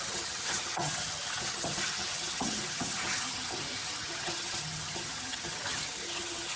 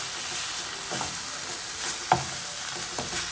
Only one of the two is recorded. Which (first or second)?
second